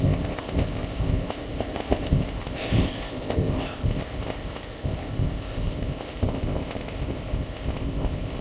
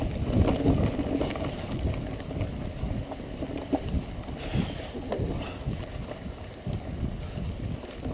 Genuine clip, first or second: second